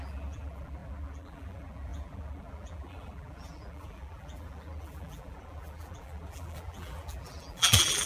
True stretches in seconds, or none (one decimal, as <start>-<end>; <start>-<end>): none